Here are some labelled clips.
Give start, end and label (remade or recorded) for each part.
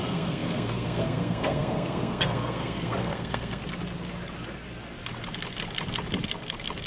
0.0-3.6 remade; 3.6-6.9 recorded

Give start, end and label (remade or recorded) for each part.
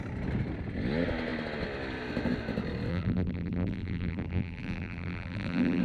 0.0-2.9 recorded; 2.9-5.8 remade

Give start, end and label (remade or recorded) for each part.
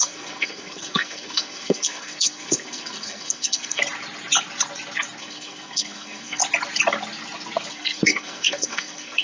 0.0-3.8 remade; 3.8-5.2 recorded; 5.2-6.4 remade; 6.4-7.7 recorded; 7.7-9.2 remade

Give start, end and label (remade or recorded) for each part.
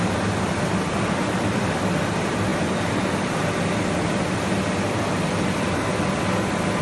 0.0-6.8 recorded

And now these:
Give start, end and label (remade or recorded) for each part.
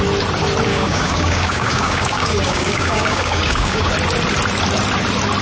0.0-0.7 recorded; 0.7-3.9 remade; 3.9-5.4 recorded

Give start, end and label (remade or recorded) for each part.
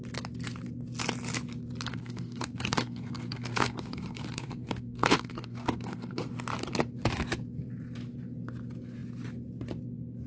0.0-1.9 recorded; 1.9-6.3 remade; 6.3-10.3 recorded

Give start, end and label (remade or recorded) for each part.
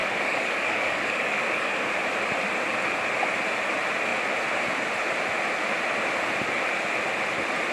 0.0-1.9 remade; 1.9-7.7 recorded